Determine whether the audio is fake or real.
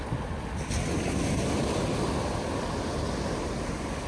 real